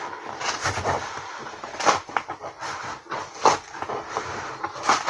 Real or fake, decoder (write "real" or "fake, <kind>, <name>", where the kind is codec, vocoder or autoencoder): fake, vocoder, BigVGAN v2